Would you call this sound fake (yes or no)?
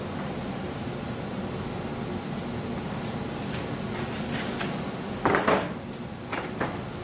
no